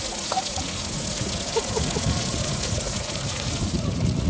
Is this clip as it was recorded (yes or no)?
no